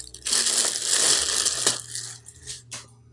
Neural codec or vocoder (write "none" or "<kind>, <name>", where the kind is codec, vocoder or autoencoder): none